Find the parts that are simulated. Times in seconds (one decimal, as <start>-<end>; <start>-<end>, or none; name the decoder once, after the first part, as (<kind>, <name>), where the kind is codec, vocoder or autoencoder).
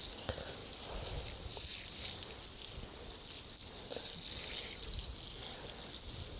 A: none